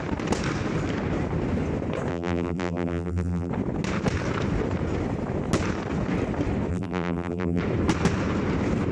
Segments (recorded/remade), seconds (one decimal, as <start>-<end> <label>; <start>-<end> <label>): 0.0-2.1 recorded; 2.1-3.5 remade; 3.5-6.7 recorded; 6.7-7.6 remade; 7.6-8.9 recorded